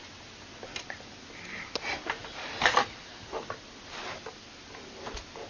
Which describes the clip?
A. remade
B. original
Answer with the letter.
B